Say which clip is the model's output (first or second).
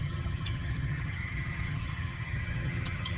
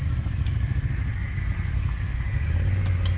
first